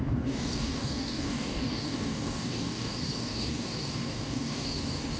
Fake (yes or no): yes